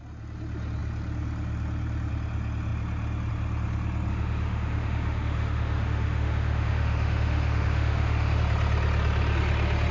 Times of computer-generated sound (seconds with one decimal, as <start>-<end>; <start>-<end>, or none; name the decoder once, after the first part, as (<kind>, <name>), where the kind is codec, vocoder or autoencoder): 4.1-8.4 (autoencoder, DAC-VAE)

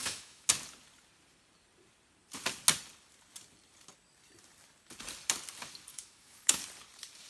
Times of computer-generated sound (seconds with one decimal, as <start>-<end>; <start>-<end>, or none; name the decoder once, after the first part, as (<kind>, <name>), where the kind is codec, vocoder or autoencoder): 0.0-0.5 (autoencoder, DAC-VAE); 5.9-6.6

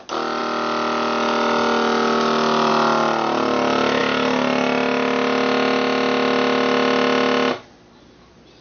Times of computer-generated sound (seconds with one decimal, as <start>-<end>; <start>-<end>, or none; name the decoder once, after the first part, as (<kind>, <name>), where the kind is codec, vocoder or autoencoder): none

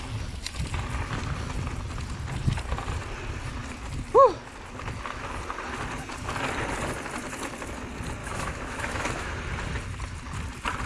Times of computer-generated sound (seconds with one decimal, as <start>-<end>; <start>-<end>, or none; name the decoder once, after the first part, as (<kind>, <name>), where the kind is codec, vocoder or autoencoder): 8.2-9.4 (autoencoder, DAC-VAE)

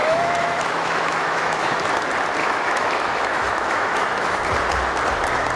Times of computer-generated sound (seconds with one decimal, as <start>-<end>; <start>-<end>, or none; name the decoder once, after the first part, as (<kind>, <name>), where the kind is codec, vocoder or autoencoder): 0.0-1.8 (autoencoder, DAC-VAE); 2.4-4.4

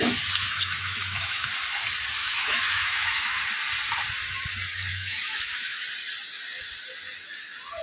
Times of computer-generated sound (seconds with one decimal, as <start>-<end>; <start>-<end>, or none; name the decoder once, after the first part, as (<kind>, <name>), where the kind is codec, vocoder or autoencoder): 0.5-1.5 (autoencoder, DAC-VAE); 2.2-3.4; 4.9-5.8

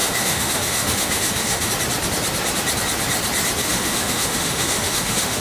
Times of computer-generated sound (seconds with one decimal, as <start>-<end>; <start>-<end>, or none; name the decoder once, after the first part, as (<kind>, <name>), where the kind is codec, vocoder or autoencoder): 0.0-1.7 (autoencoder, DAC-VAE); 3.6-5.4

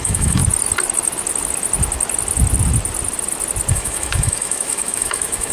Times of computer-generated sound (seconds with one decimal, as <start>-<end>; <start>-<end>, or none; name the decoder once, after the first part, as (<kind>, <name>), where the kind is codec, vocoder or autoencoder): 0.0-0.4 (autoencoder, DAC-VAE); 3.7-5.5